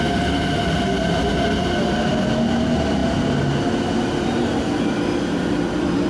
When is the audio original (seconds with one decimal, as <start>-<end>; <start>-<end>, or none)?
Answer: 0.0-6.1